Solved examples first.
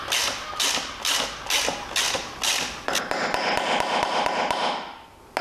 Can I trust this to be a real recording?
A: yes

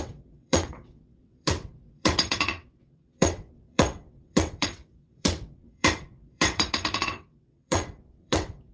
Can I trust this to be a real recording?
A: no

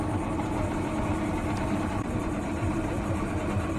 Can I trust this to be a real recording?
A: yes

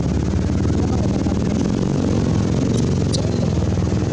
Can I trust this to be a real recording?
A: yes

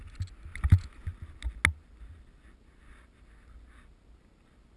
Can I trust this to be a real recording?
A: yes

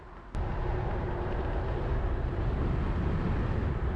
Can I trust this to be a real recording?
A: yes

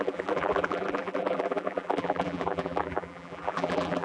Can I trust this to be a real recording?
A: no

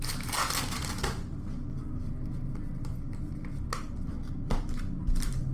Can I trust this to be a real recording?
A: yes